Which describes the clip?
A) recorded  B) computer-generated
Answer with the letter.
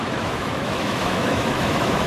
B